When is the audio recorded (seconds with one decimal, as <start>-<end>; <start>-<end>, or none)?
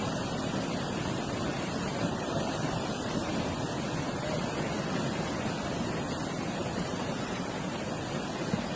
0.0-1.5; 3.3-6.6; 7.6-8.8